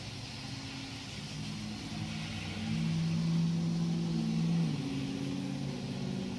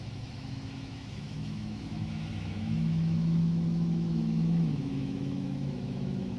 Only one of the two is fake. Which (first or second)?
second